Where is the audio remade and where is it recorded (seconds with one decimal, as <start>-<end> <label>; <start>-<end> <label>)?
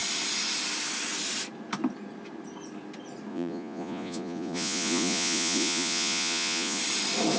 0.0-3.3 recorded; 3.3-6.8 remade; 6.8-7.4 recorded